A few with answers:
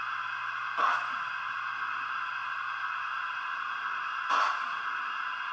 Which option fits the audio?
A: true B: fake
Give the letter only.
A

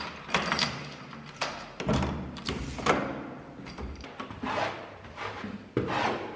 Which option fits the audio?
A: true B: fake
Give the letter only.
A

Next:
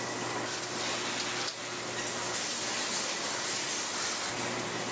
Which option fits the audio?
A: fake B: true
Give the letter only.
B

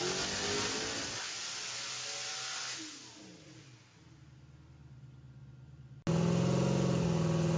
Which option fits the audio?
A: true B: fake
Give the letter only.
A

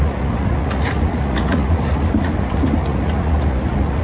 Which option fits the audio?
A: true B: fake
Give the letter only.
B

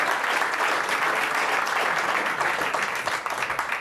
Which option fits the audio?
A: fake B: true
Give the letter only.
B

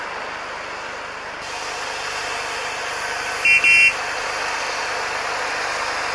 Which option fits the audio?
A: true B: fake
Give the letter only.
A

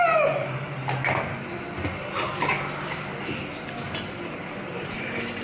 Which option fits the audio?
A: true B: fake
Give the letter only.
B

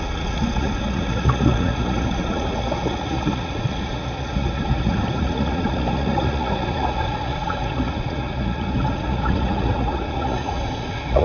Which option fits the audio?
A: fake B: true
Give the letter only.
A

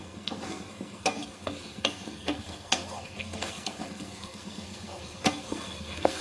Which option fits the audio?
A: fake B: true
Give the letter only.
A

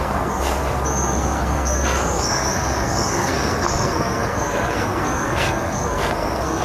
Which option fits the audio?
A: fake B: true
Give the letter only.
A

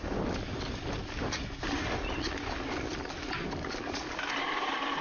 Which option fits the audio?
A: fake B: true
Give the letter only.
B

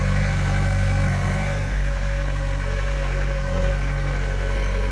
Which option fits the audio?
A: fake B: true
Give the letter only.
A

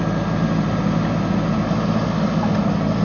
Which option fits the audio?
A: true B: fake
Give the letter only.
A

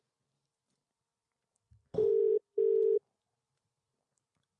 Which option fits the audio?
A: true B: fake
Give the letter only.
B